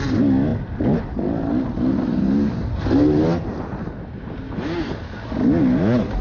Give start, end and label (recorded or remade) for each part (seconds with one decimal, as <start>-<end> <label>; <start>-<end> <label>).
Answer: 0.0-6.2 recorded